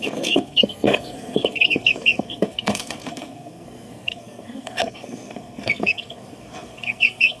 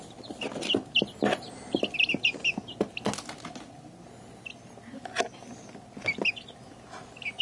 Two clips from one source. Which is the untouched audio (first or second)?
second